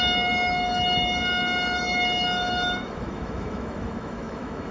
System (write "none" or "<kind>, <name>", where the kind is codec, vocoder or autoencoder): autoencoder, DAC-VAE